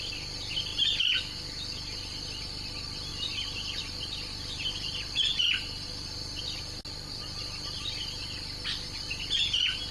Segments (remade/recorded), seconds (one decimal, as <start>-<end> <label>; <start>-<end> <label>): 0.0-9.9 recorded